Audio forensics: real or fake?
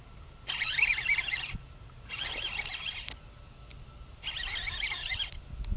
real